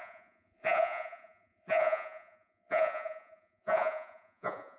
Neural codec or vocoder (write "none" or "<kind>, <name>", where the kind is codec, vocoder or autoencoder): vocoder, Vocos